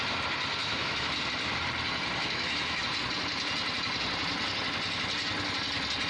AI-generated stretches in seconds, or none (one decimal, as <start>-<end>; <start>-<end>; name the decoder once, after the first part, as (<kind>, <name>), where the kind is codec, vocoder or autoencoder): 0.6-1.1 (autoencoder, DAC-VAE); 2.2-2.8